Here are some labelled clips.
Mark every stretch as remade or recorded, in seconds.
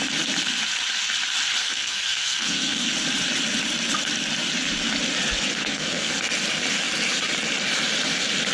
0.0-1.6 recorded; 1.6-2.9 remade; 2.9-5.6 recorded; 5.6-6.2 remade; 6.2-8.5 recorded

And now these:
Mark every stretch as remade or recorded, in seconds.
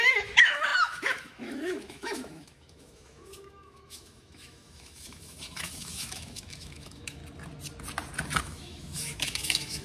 0.0-7.2 remade; 7.2-8.4 recorded; 8.4-9.8 remade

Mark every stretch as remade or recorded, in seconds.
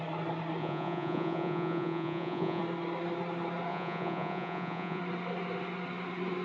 0.0-0.6 recorded; 0.6-2.6 remade; 2.6-3.7 recorded; 3.7-5.0 remade; 5.0-6.4 recorded